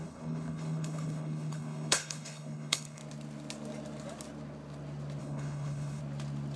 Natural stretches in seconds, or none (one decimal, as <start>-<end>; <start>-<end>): 3.0-5.2; 6.0-6.6